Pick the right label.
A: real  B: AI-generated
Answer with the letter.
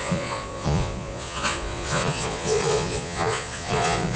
B